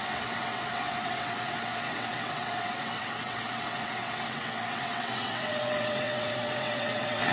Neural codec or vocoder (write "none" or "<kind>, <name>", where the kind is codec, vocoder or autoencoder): vocoder, WaveNeXt